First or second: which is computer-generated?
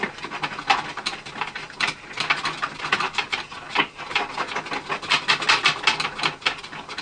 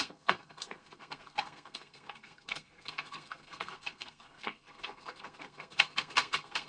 second